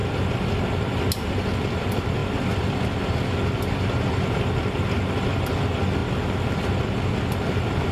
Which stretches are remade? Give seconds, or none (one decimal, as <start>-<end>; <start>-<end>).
none